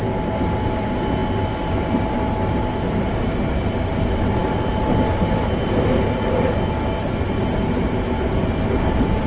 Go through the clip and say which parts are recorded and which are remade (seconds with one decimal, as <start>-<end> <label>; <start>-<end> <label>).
0.0-9.3 recorded

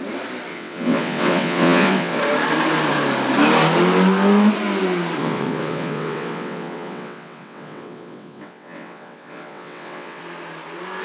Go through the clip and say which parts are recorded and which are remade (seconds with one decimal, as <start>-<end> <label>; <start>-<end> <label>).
0.0-0.5 recorded; 0.5-2.2 remade; 2.2-5.2 recorded; 5.2-10.2 remade; 10.2-11.0 recorded

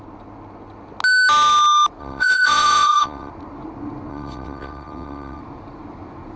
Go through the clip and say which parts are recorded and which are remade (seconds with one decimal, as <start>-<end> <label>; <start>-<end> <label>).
0.0-2.0 recorded; 2.0-3.3 remade; 3.3-4.1 recorded; 4.1-5.4 remade; 5.4-6.4 recorded

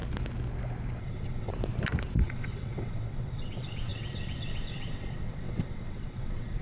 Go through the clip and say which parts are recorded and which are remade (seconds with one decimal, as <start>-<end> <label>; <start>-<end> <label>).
0.0-1.0 recorded; 1.0-1.5 remade; 1.5-2.2 recorded; 2.2-6.6 remade